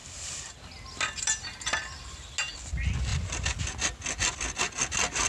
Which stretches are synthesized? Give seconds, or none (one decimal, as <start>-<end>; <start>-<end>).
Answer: none